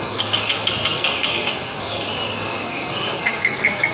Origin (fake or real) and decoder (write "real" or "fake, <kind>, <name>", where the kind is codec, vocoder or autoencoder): fake, codec, SNAC